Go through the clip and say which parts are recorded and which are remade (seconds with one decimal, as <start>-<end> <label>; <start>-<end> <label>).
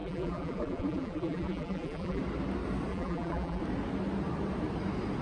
0.0-2.2 remade; 2.2-2.9 recorded; 2.9-3.6 remade; 3.6-5.2 recorded